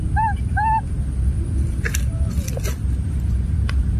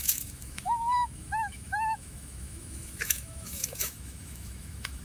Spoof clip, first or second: second